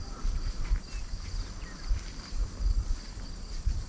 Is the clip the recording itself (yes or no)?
yes